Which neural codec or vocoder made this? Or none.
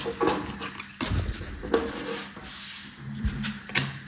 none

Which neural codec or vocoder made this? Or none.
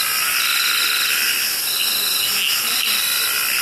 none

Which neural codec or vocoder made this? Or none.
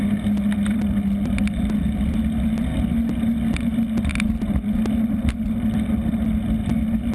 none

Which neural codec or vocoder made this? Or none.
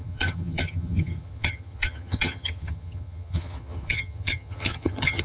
vocoder, HiFi-GAN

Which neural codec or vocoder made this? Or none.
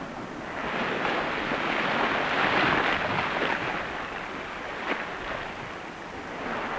none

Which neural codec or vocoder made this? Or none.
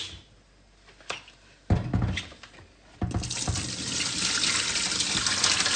none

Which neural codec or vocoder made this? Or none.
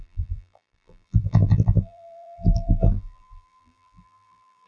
vocoder, BigVGAN v2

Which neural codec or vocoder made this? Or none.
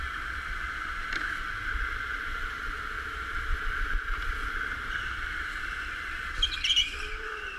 none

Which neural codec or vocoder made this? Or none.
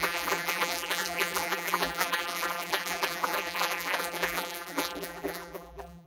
vocoder, BigVGAN v2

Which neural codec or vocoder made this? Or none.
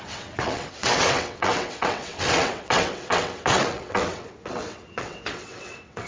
vocoder, WaveNeXt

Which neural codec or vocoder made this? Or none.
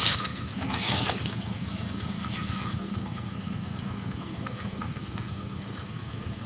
codec, SNAC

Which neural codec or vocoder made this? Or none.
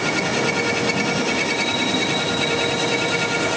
none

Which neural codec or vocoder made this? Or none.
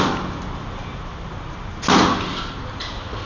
none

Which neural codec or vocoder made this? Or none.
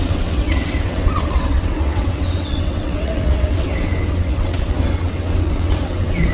vocoder, WaveNeXt